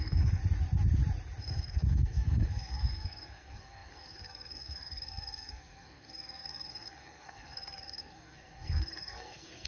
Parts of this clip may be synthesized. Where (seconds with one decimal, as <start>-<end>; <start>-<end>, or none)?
0.0-0.4; 1.4-9.7